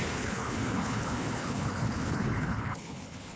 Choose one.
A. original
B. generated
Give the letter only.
B